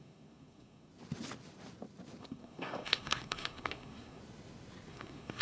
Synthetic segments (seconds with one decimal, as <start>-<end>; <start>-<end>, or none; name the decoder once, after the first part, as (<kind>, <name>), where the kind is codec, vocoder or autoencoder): 0.0-0.9 (codec, SNAC); 2.2-4.2; 4.9-5.4

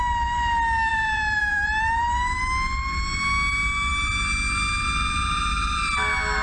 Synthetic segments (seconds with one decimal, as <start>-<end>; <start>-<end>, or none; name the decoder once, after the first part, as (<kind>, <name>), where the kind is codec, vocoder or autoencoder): 0.9-2.4 (vocoder, BigVGAN v2)

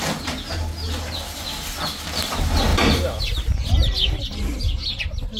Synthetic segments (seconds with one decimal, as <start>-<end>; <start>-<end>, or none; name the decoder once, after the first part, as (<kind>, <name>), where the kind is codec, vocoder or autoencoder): 2.7-3.2 (vocoder, BigVGAN v2)

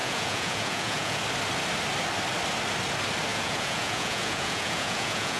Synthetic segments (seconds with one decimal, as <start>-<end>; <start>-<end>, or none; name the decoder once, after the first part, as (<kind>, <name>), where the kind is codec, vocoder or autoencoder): 0.0-1.2 (vocoder, Vocos); 3.3-5.4

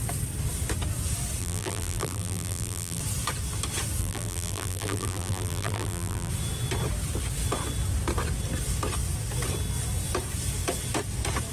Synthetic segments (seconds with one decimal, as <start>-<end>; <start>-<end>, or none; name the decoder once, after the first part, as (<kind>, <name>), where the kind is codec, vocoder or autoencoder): 1.4-3.0 (vocoder, BigVGAN v2); 4.0-6.3

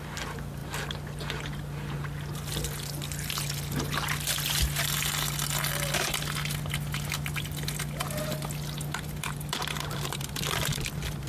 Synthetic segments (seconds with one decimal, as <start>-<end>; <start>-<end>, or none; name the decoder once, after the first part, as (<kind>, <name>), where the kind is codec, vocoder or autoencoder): none

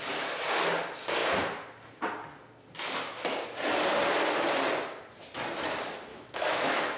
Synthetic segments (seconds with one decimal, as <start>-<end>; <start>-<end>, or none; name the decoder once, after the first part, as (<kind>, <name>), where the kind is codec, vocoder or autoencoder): 6.1-7.0 (autoencoder, DAC-VAE)